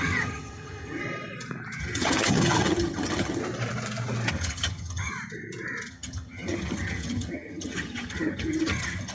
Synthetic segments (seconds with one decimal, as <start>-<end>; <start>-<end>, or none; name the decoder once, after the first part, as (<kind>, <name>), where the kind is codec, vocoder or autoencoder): 0.0-1.0 (vocoder, HiFi-GAN); 1.8-3.4; 4.3-5.1; 5.9-9.1